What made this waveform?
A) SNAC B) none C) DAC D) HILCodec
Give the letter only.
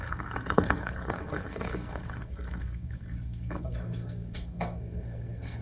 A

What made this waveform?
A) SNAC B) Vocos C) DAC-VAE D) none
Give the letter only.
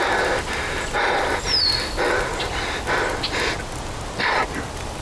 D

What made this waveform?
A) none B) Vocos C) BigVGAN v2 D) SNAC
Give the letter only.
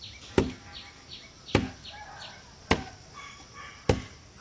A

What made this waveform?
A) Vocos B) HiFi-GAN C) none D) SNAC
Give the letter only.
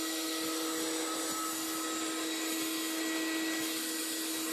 C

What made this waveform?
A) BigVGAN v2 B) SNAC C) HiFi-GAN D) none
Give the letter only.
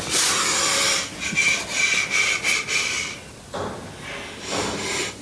D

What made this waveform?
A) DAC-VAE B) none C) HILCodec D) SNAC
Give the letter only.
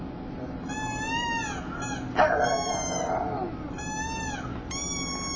B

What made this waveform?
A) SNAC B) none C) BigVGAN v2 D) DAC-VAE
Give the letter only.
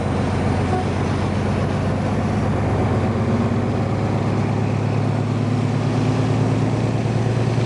B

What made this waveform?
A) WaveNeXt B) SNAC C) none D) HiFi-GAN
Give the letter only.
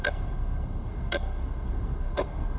B